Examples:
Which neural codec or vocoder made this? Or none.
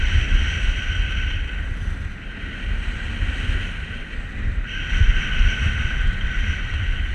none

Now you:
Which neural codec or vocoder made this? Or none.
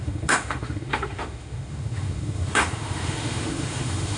autoencoder, DAC-VAE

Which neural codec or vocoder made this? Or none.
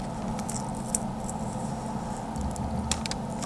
none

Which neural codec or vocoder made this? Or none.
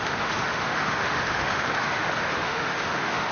autoencoder, DAC-VAE